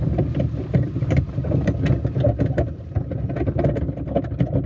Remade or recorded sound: recorded